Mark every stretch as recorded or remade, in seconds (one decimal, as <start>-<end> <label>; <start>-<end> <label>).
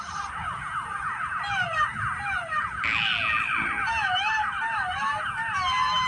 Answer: 0.0-6.1 recorded